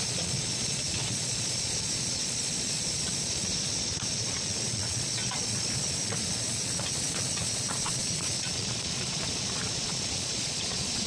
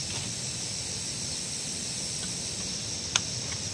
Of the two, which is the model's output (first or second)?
first